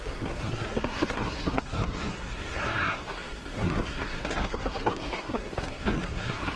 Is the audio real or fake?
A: fake